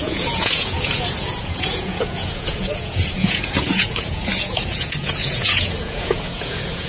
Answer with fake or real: fake